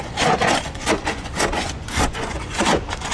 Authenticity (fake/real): fake